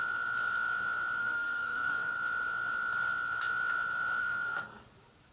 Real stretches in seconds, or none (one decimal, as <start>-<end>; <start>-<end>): 0.0-1.2; 2.1-4.2; 4.8-5.3